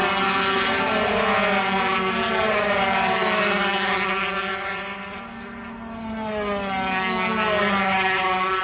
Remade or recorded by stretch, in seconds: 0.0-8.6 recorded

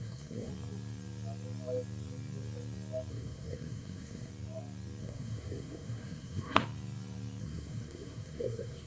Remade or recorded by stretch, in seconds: 0.0-0.5 remade; 0.5-3.1 recorded; 3.1-4.3 remade; 4.3-5.0 recorded; 5.0-6.6 remade; 6.6-7.4 recorded; 7.4-8.9 remade

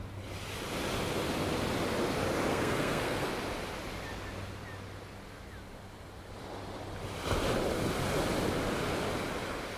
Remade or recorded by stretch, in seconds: 0.0-2.5 recorded; 2.5-3.3 remade; 3.3-9.8 recorded

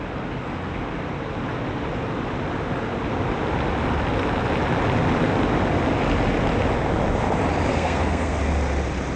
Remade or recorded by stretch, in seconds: 0.0-7.7 recorded; 7.7-8.4 remade; 8.4-9.2 recorded